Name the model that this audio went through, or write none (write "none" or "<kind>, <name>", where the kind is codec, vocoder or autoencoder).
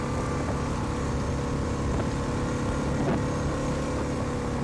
none